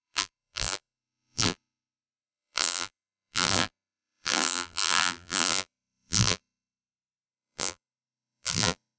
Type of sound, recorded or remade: remade